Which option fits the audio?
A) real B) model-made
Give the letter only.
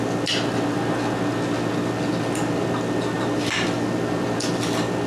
A